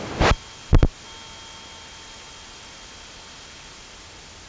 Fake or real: real